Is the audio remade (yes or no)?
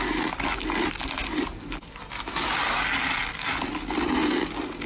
no